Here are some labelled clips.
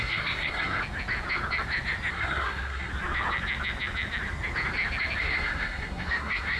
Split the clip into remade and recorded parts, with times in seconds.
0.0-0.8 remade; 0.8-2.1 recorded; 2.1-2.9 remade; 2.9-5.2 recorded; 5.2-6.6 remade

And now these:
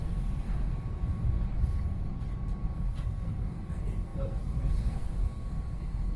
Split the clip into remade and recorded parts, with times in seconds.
0.0-6.2 remade

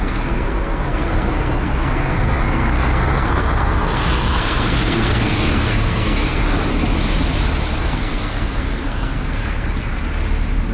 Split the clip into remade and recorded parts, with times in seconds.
0.0-6.4 remade; 6.4-7.8 recorded; 7.8-9.9 remade; 9.9-10.7 recorded

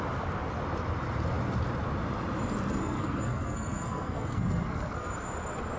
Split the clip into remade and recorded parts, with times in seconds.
0.0-2.8 recorded; 2.8-5.1 remade; 5.1-5.8 recorded

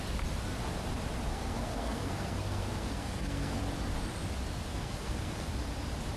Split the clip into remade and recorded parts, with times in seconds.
0.0-1.3 recorded; 1.3-3.6 remade; 3.6-4.7 recorded; 4.7-5.5 remade; 5.5-6.2 recorded

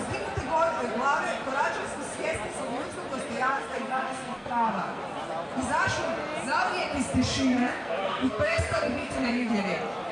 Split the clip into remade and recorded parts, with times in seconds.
0.0-3.5 recorded; 3.5-5.0 remade; 5.0-7.6 recorded; 7.6-9.5 remade; 9.5-10.1 recorded

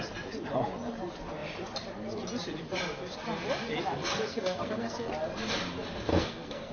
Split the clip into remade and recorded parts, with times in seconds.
0.0-4.1 recorded; 4.1-5.1 remade; 5.1-6.1 recorded; 6.1-6.7 remade